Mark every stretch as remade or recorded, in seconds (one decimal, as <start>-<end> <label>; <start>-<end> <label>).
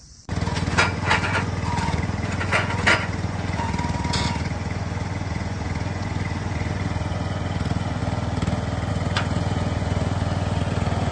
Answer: 0.0-8.0 remade; 8.0-8.9 recorded; 8.9-11.1 remade